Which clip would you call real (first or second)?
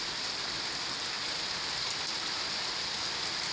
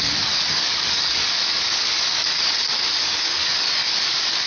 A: first